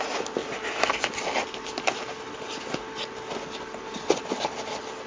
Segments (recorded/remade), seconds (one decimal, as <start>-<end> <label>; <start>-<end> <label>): 0.0-5.1 recorded